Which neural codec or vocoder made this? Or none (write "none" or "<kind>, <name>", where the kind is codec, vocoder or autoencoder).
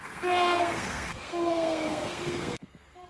codec, SNAC